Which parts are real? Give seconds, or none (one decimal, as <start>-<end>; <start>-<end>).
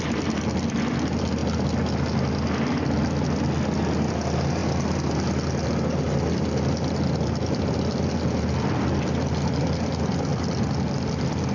0.0-11.5